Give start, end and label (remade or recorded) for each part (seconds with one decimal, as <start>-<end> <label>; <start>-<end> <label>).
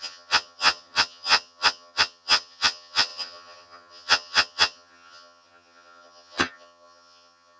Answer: 0.0-7.6 remade